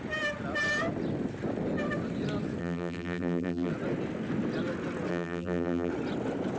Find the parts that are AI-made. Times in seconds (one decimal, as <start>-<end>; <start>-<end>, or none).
2.6-3.7; 5.1-5.9